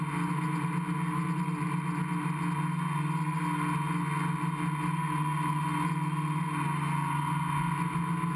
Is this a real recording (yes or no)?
yes